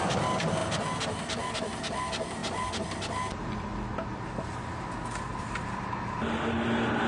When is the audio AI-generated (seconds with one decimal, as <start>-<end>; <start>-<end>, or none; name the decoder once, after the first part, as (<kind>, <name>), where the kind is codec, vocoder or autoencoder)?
none